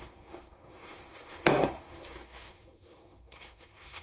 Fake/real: fake